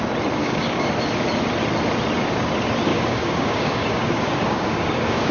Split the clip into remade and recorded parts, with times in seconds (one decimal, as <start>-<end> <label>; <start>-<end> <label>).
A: 0.0-0.4 recorded; 0.4-0.9 remade; 0.9-2.9 recorded; 2.9-5.3 remade

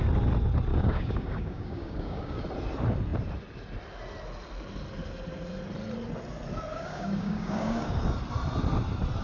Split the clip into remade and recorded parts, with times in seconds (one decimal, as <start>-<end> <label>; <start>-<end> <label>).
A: 0.0-0.7 recorded; 0.7-2.4 remade; 2.4-6.7 recorded; 6.7-8.0 remade; 8.0-9.2 recorded

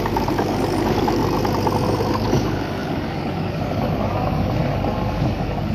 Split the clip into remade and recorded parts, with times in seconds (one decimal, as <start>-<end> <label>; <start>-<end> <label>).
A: 0.0-1.2 remade; 1.2-2.1 recorded; 2.1-5.7 remade

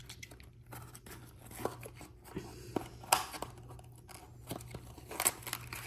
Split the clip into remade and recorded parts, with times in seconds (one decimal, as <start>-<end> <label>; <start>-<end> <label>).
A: 0.0-5.9 recorded

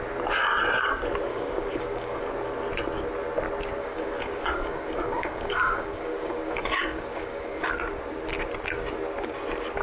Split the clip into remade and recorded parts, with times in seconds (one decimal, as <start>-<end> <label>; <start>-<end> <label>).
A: 0.0-1.3 recorded; 1.3-2.2 remade; 2.2-3.8 recorded; 3.8-7.7 remade; 7.7-9.8 recorded

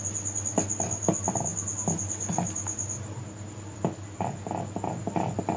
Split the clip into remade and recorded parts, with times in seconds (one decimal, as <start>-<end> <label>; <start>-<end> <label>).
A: 0.0-5.6 recorded

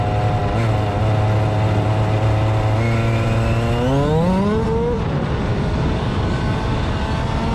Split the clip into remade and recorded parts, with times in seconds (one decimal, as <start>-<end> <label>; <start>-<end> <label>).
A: 0.0-5.5 recorded; 5.5-7.1 remade; 7.1-7.5 recorded

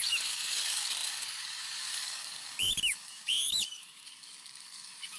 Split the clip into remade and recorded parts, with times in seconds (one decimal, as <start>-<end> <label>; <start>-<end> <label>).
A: 0.0-5.2 remade